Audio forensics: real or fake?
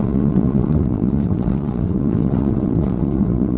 fake